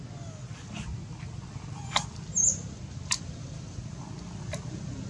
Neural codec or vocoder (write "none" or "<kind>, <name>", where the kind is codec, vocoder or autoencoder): none